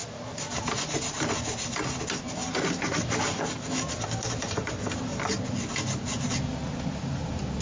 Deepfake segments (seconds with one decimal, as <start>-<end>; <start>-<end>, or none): none